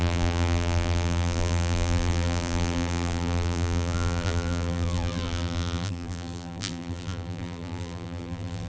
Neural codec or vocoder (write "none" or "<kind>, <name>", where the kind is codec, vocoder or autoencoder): vocoder, BigVGAN v2